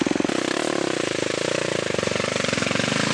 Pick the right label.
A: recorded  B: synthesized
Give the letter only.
A